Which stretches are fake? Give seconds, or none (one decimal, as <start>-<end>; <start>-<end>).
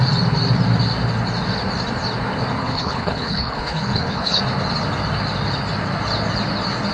2.6-4.4